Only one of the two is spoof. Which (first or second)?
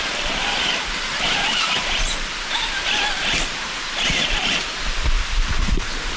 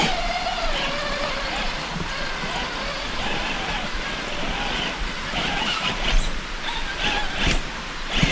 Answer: first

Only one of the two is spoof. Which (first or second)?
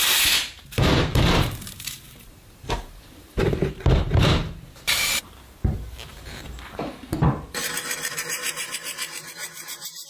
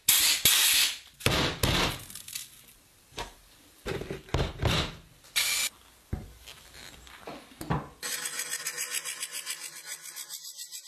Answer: first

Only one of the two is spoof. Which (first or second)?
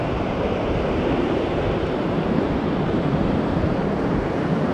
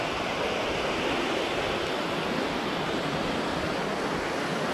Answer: first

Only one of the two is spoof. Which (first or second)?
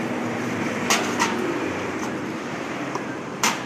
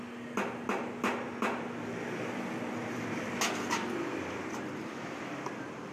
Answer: first